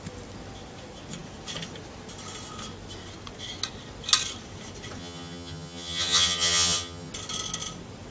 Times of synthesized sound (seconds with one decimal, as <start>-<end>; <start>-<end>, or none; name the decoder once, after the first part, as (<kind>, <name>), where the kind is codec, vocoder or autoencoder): 5.0-7.1 (vocoder, HiFi-GAN)